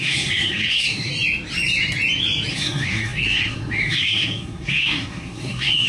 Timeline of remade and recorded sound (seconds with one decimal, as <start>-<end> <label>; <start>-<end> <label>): 0.0-1.1 remade; 1.1-2.5 recorded; 2.5-5.9 remade